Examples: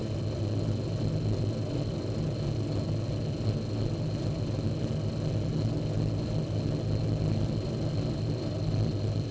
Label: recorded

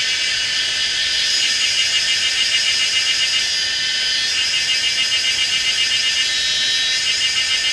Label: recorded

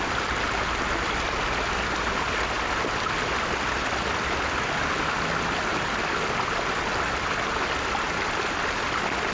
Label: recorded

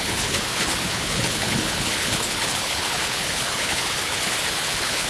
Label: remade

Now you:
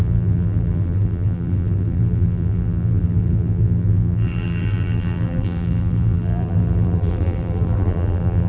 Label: remade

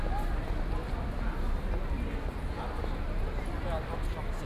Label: recorded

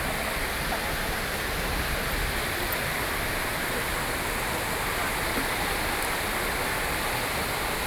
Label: recorded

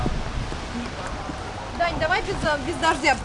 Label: recorded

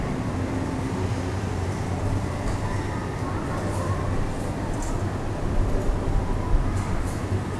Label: recorded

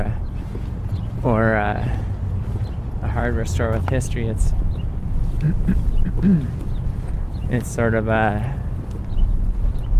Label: recorded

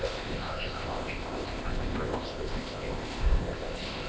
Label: remade